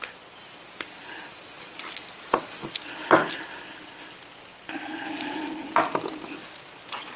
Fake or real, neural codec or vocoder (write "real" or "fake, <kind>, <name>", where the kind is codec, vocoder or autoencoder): real